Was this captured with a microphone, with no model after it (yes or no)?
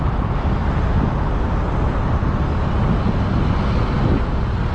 yes